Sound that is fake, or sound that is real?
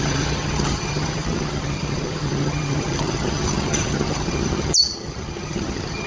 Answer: fake